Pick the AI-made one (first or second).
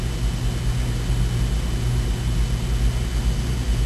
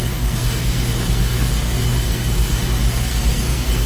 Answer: second